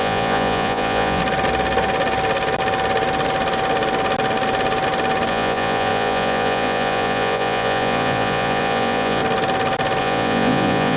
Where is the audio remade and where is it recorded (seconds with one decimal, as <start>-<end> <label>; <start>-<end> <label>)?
0.0-1.2 remade; 1.2-5.3 recorded; 5.3-9.2 remade; 9.2-10.0 recorded; 10.0-11.0 remade